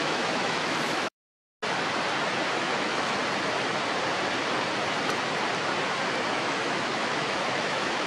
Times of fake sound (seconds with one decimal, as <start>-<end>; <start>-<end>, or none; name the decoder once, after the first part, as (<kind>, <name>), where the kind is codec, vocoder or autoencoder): 0.0-1.4 (autoencoder, DAC-VAE); 2.6-3.2; 6.3-8.1